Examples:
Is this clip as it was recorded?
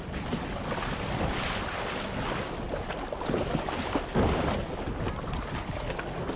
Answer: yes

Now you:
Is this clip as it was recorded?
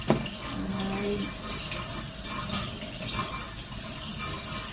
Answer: yes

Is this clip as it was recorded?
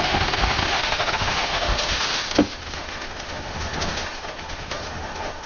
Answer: no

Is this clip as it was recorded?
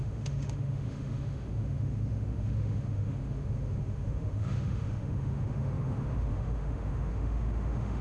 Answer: no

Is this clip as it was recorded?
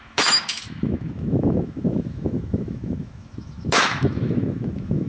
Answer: no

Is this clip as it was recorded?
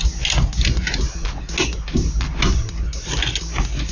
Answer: yes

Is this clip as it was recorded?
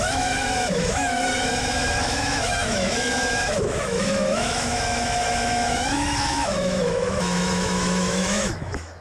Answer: no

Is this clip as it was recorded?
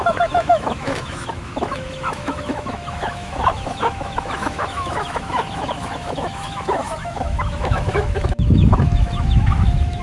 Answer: no